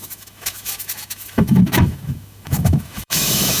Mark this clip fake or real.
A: fake